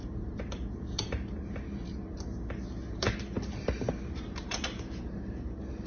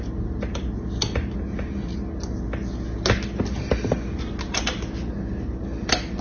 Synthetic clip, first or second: first